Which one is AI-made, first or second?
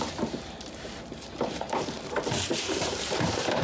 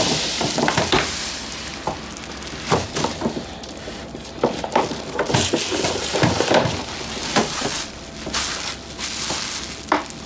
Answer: first